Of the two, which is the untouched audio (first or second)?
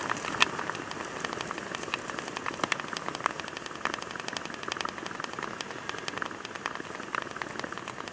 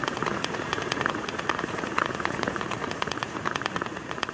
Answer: first